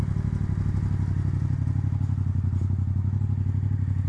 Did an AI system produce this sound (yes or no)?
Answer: no